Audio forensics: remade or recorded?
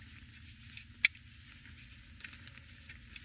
recorded